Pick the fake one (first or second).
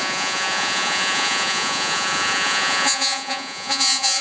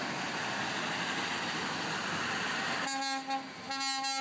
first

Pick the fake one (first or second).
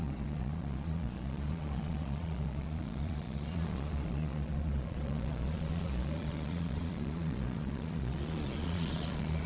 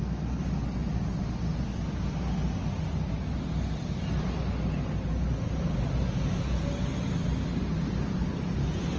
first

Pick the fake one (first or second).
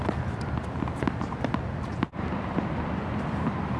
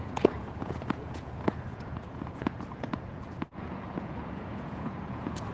second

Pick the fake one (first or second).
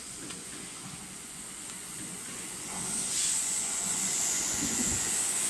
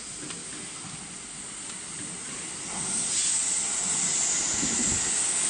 first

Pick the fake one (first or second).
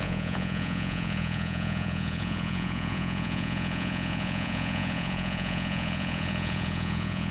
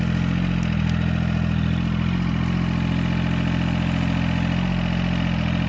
first